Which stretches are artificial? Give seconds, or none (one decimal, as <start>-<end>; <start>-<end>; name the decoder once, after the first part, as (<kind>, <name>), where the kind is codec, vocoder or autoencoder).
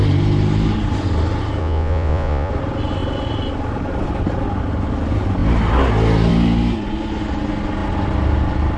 1.6-2.5 (vocoder, Vocos)